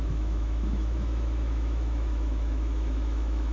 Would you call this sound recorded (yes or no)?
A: no